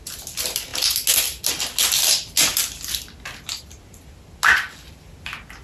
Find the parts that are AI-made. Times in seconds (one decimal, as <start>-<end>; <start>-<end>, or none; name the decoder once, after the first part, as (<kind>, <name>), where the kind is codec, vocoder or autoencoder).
none